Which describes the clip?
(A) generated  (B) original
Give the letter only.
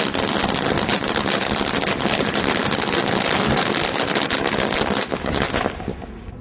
B